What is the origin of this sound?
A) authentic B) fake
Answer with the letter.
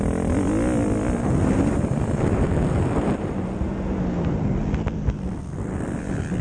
A